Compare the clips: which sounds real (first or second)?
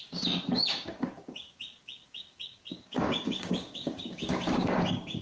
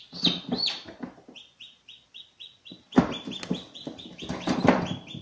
second